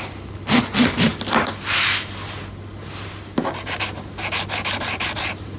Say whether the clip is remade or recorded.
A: recorded